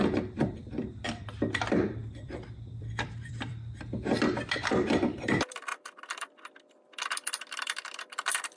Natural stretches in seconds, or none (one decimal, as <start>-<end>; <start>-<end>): none